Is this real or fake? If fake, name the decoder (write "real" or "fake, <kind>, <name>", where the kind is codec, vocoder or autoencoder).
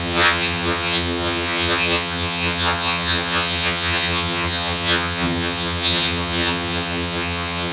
fake, vocoder, HiFi-GAN